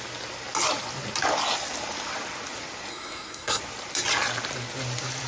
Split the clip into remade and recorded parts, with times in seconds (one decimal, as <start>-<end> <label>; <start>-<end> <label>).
0.0-2.9 recorded; 2.9-3.6 remade; 3.6-5.3 recorded